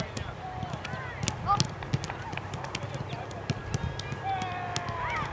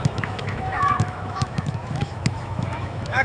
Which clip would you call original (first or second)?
first